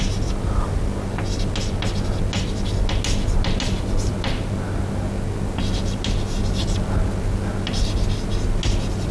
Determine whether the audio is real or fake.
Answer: real